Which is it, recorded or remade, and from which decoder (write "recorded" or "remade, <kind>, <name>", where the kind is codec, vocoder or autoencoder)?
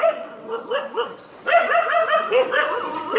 remade, vocoder, WaveNeXt